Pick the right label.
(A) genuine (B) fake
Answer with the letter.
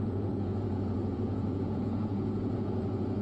B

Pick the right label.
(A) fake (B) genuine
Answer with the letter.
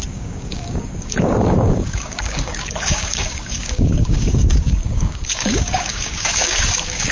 A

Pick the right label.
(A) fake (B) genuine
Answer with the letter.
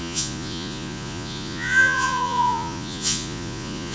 A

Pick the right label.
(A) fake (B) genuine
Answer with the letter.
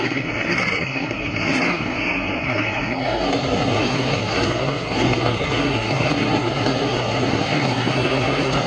A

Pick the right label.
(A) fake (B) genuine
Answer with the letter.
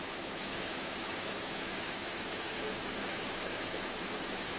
A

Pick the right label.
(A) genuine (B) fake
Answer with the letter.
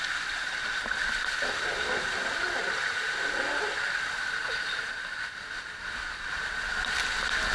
A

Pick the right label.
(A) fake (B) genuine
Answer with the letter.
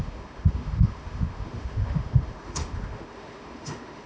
A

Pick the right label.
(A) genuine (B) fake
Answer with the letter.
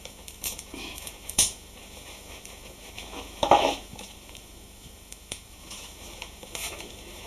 B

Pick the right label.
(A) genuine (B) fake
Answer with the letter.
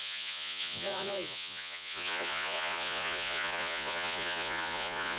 B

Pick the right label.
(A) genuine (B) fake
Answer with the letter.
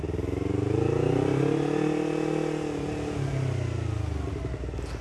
A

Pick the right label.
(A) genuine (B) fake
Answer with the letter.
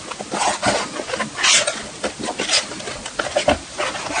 A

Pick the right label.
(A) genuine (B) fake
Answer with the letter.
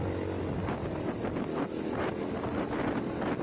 A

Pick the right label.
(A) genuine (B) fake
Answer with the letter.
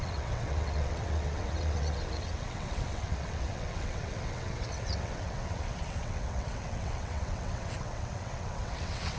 B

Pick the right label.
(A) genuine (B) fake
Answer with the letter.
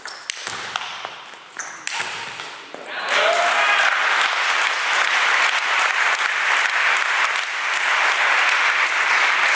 A